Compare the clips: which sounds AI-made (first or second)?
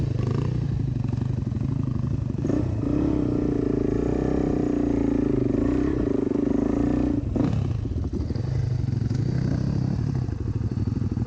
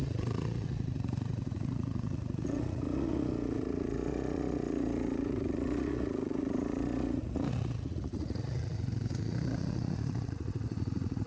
second